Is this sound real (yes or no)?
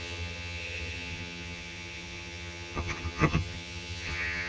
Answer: no